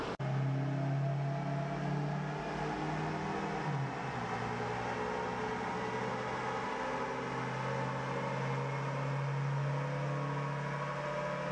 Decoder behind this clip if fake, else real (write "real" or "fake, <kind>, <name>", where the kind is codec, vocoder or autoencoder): real